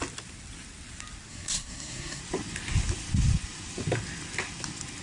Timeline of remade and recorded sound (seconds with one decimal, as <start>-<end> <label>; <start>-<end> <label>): 0.0-1.3 recorded; 1.3-2.2 remade; 2.2-5.0 recorded